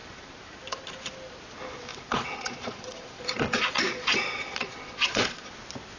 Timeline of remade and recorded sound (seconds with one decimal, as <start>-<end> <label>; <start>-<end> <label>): 0.0-1.9 recorded; 1.9-5.5 remade; 5.5-6.0 recorded